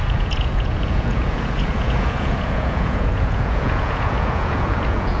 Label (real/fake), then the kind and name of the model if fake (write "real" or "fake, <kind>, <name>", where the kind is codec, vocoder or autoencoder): fake, vocoder, Vocos